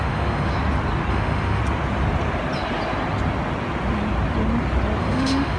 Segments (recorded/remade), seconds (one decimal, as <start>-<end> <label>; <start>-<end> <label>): 0.0-0.5 remade; 0.5-1.1 recorded; 1.1-1.6 remade; 1.6-5.0 recorded; 5.0-5.6 remade